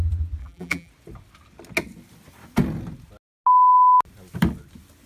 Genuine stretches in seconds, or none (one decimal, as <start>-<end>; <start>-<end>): 0.0-0.4; 0.9-5.1